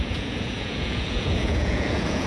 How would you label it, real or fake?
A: fake